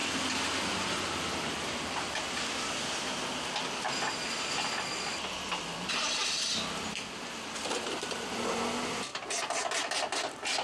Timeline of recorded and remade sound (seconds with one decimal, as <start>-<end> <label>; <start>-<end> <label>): 0.0-10.6 recorded